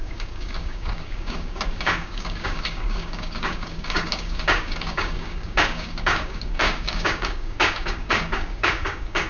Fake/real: fake